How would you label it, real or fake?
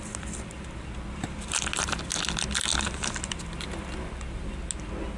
real